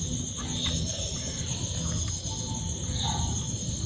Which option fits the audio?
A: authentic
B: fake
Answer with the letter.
A